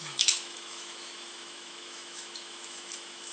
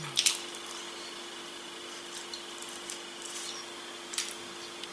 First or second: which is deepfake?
first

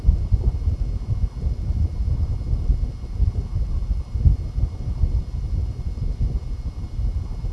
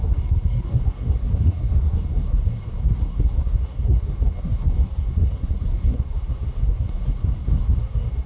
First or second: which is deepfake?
second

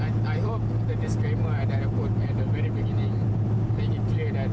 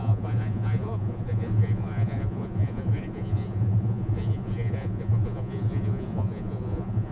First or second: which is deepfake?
second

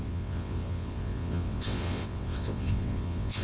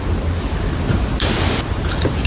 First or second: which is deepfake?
first